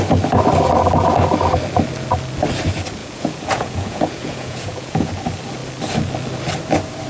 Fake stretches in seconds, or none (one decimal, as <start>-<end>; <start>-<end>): 3.0-5.1